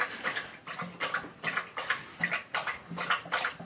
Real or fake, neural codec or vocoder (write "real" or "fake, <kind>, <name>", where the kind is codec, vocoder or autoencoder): fake, vocoder, BigVGAN v2